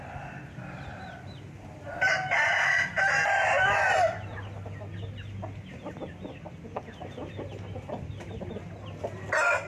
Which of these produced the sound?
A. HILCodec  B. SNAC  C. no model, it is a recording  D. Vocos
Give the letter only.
C